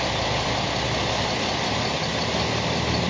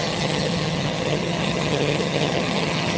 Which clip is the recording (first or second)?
first